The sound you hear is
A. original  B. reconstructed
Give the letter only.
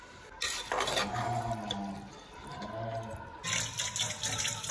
A